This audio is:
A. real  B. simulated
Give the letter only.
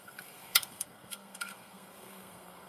B